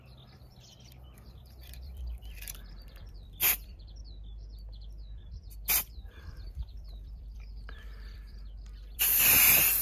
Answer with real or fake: fake